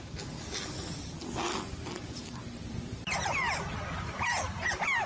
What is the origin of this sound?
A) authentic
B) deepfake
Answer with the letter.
A